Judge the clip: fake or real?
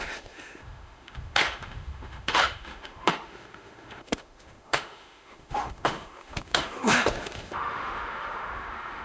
fake